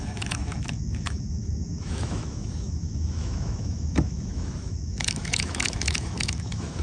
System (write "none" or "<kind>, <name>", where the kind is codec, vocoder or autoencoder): autoencoder, DAC-VAE